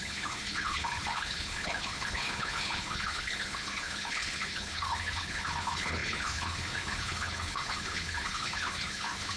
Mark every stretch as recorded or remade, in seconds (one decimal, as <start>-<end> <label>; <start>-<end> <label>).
0.0-9.4 remade